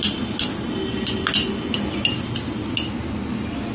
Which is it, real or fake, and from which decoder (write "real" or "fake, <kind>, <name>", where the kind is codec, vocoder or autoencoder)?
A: real